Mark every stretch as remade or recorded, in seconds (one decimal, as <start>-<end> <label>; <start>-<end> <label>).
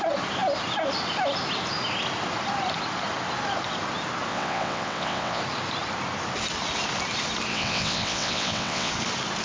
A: 0.0-4.3 recorded; 4.3-5.4 remade; 5.4-7.5 recorded; 7.5-8.9 remade; 8.9-9.4 recorded